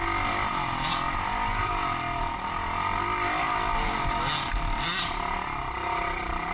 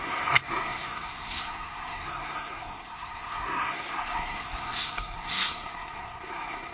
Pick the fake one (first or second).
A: second